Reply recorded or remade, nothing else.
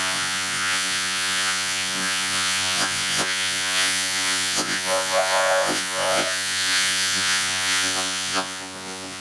remade